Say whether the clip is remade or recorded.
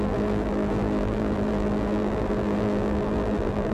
remade